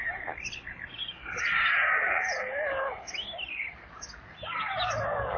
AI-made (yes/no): no